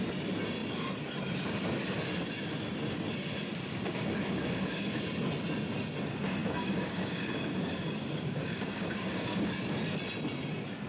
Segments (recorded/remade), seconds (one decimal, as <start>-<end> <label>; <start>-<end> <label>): 0.0-3.7 recorded; 3.7-5.0 remade; 5.0-6.4 recorded; 6.4-9.5 remade; 9.5-10.9 recorded